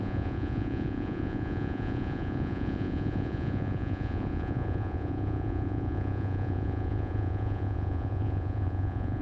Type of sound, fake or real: fake